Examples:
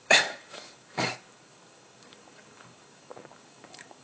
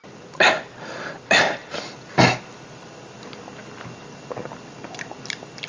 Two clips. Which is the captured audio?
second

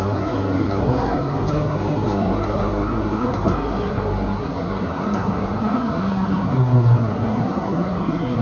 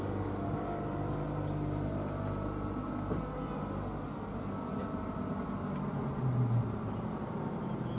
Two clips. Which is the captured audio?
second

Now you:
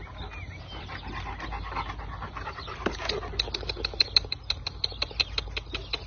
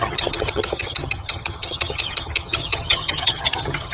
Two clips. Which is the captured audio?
first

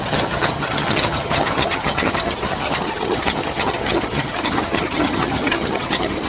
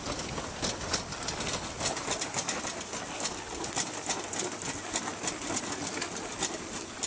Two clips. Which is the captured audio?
second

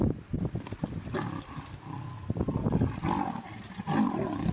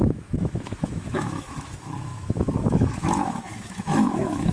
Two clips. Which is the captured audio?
first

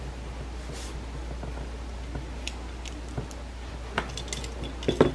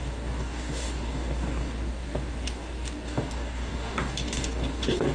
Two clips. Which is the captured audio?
first